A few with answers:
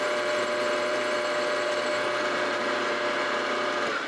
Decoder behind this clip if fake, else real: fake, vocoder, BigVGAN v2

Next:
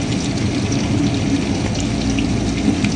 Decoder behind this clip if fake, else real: real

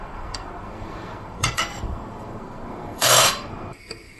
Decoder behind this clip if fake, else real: fake, codec, SNAC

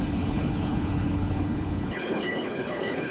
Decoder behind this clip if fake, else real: fake, codec, HILCodec